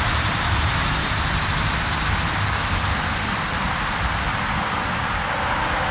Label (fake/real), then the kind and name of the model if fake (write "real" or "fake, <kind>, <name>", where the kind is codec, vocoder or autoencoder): real